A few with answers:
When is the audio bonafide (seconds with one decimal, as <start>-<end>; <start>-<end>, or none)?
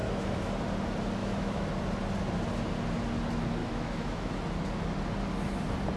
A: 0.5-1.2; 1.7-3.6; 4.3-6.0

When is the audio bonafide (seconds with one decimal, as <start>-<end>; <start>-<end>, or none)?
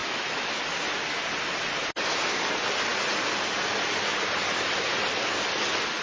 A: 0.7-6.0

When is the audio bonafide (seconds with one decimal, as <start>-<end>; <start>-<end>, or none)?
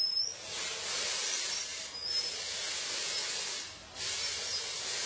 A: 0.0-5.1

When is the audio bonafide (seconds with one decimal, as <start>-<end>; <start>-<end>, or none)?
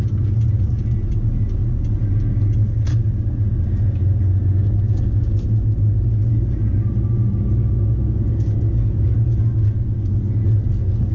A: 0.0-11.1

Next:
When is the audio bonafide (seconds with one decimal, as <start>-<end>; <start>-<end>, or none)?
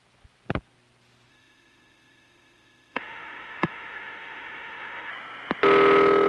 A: 0.0-1.3; 5.1-6.3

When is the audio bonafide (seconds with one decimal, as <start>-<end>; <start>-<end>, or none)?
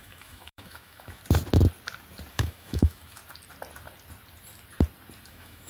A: 1.2-2.3; 3.2-5.3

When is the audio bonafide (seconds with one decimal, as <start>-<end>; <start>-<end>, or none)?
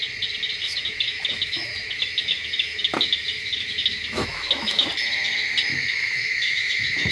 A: 0.0-0.6; 4.9-5.7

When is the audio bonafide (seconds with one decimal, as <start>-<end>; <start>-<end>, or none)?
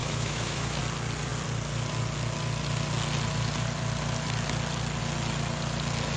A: 0.8-6.2